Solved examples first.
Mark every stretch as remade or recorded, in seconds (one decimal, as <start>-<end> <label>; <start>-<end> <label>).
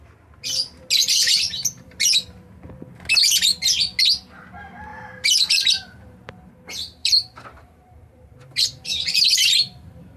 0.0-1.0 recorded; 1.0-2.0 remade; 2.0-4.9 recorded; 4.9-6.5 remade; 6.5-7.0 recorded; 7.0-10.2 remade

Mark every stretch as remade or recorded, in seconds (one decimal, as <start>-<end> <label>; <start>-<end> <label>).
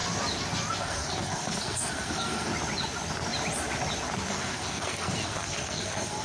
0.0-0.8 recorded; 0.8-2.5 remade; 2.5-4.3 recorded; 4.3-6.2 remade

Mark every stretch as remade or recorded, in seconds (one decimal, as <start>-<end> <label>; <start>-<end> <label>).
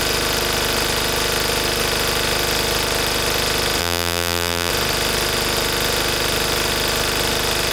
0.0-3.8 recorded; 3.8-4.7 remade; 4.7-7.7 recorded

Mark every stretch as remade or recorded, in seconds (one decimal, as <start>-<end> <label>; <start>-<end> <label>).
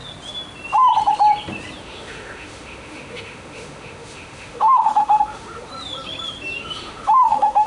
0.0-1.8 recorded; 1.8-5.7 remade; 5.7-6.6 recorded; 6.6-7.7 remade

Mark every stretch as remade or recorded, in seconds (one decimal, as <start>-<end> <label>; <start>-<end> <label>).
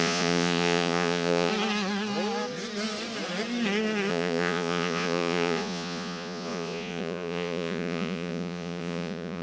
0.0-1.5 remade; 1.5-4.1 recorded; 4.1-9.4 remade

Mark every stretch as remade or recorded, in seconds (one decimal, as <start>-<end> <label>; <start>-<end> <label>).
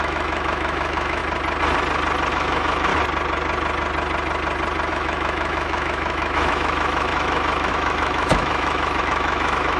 0.0-1.2 remade; 1.2-2.3 recorded; 2.3-2.9 remade; 2.9-4.9 recorded; 4.9-9.8 remade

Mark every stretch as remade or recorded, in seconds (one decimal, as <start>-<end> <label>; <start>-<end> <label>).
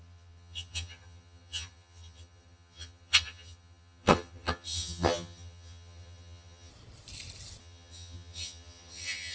0.0-6.7 remade; 6.7-7.6 recorded; 7.6-9.3 remade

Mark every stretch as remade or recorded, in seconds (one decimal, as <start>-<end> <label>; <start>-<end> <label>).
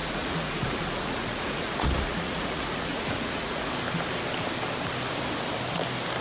0.0-3.7 remade; 3.7-6.2 recorded